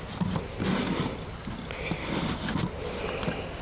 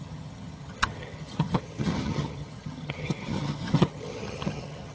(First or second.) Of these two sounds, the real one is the first